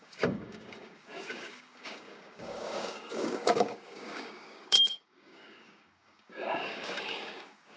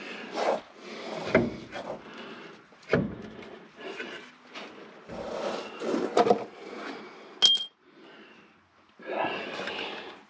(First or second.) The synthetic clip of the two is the first